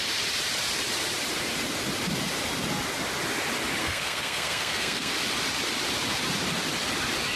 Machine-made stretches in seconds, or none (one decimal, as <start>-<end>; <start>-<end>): 3.8-5.1